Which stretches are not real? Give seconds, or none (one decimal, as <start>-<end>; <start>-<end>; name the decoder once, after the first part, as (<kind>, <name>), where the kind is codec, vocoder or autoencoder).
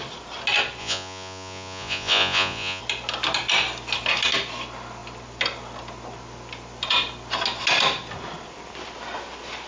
0.8-2.8 (vocoder, Vocos)